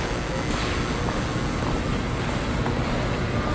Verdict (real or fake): real